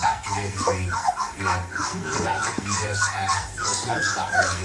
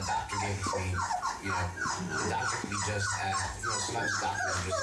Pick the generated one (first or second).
first